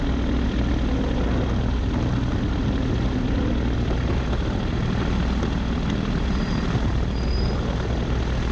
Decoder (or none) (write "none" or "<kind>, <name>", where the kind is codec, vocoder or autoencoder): none